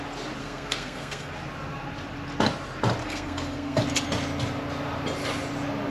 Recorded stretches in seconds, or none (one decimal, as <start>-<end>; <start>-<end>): 0.0-0.4; 1.3-3.0; 3.8-5.9